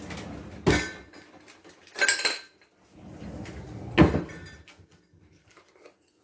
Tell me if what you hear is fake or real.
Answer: real